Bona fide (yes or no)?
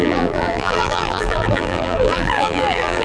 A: no